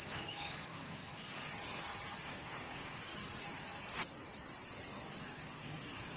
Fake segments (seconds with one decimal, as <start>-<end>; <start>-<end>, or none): 0.0-1.0; 2.2-3.1; 5.2-6.2